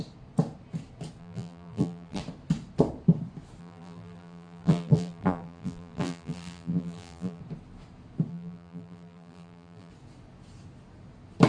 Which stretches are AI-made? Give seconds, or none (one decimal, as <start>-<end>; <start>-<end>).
1.2-2.2; 3.6-7.4; 8.3-9.9